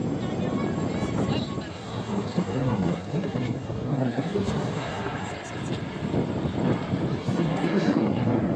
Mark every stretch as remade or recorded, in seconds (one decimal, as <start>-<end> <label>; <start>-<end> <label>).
0.0-1.7 recorded; 1.7-5.3 remade; 5.3-7.2 recorded; 7.2-8.6 remade